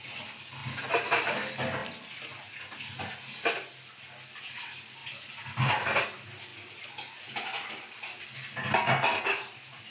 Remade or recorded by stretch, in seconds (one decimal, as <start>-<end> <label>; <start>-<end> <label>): 0.0-9.9 recorded